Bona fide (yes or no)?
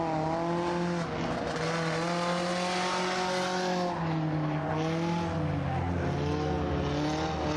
yes